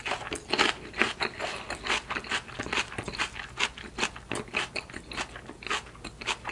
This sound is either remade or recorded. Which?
recorded